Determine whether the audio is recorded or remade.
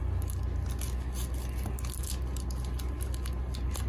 recorded